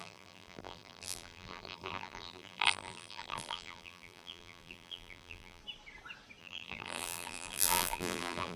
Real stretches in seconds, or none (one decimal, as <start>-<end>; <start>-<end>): 5.6-6.4